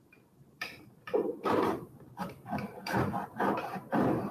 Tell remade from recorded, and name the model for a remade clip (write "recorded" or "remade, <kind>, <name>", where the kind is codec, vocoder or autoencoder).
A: remade, vocoder, BigVGAN v2